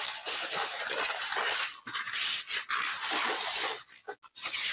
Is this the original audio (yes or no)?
yes